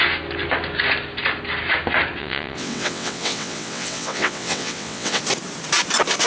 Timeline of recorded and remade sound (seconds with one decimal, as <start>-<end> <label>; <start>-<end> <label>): 0.0-2.2 recorded; 2.2-5.2 remade; 5.2-6.3 recorded